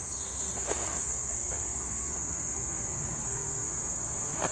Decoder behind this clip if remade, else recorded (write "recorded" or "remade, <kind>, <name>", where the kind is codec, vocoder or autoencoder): remade, codec, SNAC